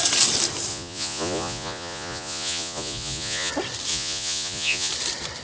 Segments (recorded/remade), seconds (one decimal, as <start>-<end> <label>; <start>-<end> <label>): 0.0-0.7 recorded; 0.7-3.5 remade; 3.5-3.9 recorded; 3.9-4.9 remade; 4.9-5.4 recorded